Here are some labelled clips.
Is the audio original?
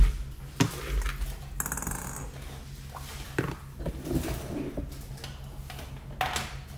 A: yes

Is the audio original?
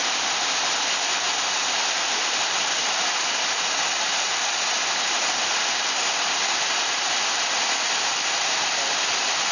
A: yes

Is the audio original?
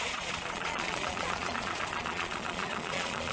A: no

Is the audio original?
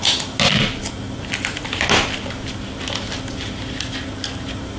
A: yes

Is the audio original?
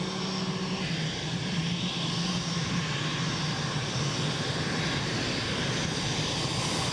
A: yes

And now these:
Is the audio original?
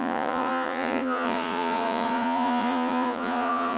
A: no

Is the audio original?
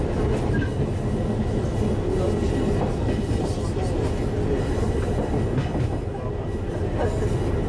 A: yes